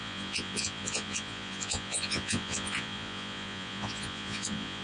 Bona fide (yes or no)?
no